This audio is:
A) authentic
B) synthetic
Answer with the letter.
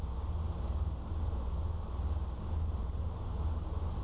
A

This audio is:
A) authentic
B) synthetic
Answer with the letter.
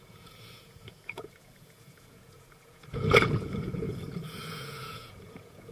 B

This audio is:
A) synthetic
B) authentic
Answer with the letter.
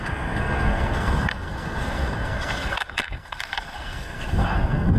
A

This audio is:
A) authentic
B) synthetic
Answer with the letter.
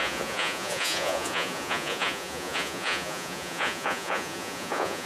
B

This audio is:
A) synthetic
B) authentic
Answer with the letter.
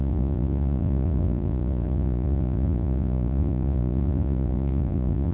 A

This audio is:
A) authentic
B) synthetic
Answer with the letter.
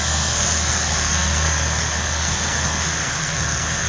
B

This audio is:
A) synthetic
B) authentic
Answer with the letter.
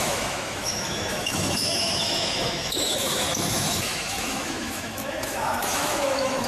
A